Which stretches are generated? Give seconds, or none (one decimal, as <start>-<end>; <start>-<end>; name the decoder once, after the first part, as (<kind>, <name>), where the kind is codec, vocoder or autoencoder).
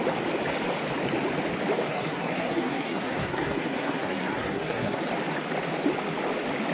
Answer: 1.9-5.0 (codec, SNAC)